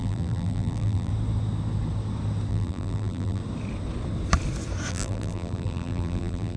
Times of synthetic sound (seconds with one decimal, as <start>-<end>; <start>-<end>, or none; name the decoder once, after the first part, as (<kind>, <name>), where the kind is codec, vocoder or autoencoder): 0.0-1.1 (vocoder, BigVGAN v2); 2.5-3.4; 4.9-6.6